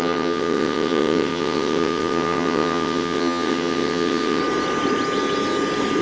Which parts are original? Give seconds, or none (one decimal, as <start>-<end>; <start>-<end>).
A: 4.4-6.0